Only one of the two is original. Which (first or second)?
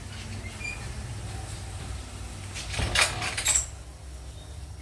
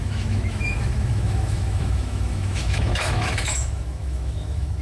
first